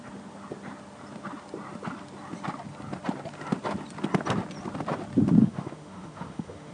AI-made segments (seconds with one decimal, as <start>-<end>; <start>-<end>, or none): 5.4-6.7